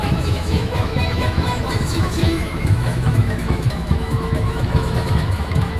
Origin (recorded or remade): remade